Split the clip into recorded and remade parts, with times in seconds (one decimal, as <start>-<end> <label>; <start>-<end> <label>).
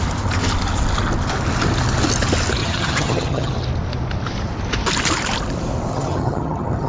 0.0-2.6 recorded; 2.6-3.5 remade; 3.5-5.9 recorded; 5.9-6.9 remade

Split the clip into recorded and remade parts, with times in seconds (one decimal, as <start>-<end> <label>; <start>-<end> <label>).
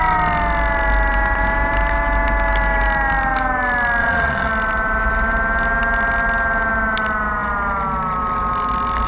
0.0-4.0 recorded; 4.0-4.5 remade; 4.5-9.1 recorded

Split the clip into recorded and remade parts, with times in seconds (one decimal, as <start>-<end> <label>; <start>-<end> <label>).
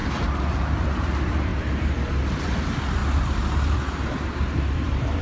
0.0-5.2 remade